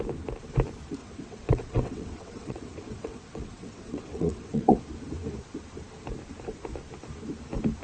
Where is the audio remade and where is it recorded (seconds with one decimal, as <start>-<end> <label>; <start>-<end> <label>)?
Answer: 0.0-1.0 recorded; 1.0-4.8 remade; 4.8-7.8 recorded